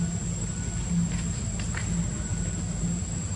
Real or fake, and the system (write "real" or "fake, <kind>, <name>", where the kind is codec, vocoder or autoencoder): fake, vocoder, BigVGAN v2